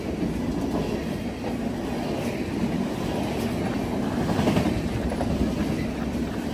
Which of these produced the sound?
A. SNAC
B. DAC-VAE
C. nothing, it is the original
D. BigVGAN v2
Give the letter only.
C